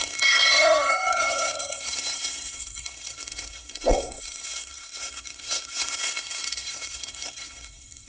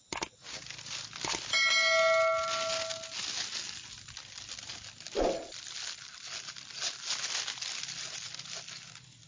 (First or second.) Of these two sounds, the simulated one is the first